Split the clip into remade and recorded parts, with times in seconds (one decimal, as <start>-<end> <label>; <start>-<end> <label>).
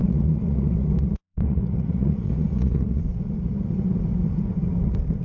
0.0-3.0 remade; 3.0-5.2 recorded